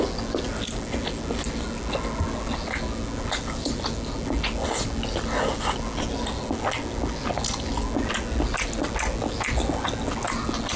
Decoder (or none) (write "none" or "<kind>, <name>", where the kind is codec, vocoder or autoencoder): none